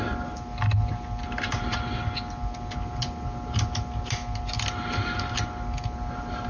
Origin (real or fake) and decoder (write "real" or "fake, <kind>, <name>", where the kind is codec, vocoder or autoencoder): real